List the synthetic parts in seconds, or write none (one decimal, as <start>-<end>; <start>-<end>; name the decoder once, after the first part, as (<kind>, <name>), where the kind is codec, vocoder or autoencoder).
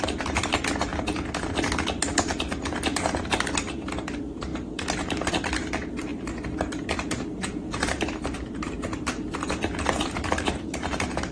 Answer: 0.0-0.9 (vocoder, BigVGAN v2); 2.5-11.3